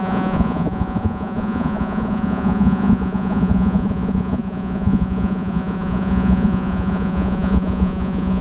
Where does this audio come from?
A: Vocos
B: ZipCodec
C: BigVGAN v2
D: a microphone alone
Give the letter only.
A